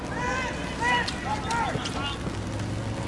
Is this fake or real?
real